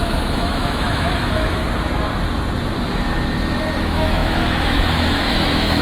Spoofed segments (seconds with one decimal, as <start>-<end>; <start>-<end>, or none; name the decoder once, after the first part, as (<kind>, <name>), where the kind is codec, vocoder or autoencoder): 0.0-1.6 (autoencoder, DAC-VAE); 3.8-5.8